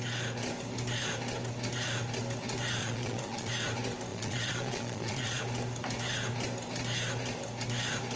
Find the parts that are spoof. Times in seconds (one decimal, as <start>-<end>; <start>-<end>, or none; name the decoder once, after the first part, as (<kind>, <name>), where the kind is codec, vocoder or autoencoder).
2.8-3.5 (vocoder, Vocos); 4.1-5.4